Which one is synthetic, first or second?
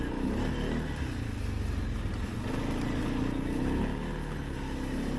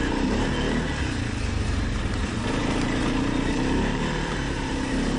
second